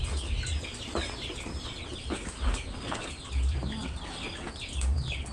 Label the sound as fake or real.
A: real